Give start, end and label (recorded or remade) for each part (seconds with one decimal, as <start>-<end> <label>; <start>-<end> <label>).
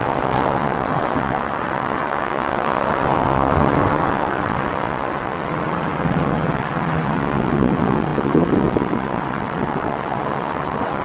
0.0-11.0 remade